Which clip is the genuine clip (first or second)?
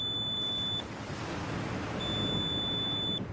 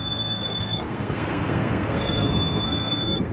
first